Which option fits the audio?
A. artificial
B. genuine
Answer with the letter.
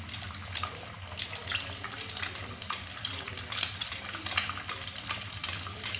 B